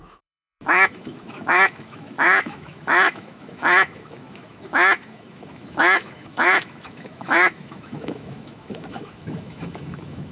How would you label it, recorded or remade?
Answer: remade